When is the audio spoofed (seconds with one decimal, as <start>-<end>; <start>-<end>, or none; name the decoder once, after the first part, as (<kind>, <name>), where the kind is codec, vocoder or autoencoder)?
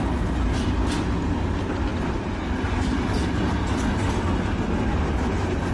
none